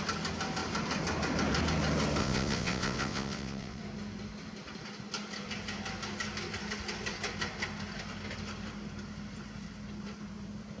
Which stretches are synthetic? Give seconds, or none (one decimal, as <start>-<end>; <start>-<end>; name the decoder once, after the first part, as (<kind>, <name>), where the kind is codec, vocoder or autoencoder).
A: 2.2-3.8 (vocoder, WaveNeXt)